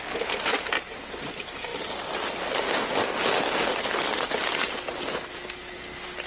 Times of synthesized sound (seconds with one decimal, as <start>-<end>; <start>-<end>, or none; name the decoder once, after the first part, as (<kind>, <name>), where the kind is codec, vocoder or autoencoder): 1.7-2.3 (vocoder, BigVGAN v2)